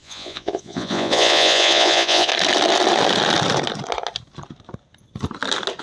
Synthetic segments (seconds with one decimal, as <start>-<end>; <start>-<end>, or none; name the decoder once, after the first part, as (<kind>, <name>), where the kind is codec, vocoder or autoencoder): 0.0-2.3 (vocoder, Vocos)